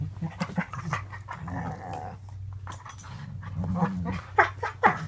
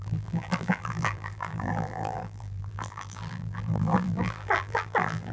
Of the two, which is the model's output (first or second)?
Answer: second